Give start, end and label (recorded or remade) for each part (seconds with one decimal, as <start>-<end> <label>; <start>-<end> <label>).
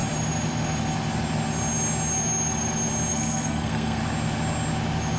0.0-3.1 recorded; 3.1-4.0 remade; 4.0-5.2 recorded